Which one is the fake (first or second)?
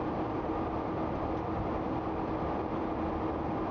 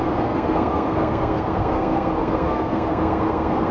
second